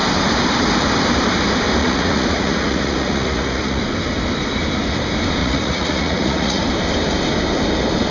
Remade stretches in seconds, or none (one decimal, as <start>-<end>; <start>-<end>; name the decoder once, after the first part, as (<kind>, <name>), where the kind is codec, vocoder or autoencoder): 1.8-3.8 (vocoder, Vocos); 5.4-6.6